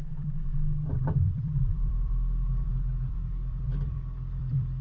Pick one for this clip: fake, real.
fake